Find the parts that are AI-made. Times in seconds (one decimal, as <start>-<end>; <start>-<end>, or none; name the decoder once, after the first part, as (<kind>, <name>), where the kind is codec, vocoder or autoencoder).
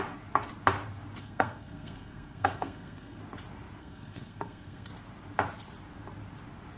1.2-3.2 (codec, SNAC); 3.8-4.9